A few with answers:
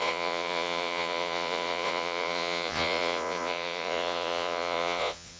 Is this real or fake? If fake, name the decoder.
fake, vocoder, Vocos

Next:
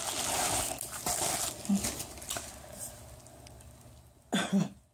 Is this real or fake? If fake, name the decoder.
real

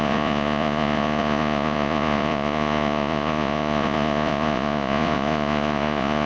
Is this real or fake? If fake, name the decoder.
fake, vocoder, Vocos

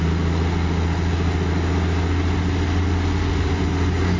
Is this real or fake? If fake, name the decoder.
real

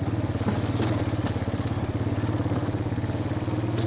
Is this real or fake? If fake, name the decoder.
real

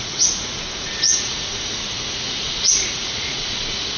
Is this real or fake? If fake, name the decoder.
fake, vocoder, Vocos